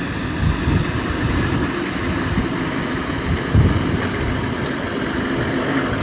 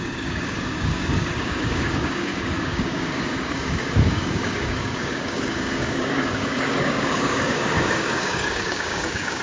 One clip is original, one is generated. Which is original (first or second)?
first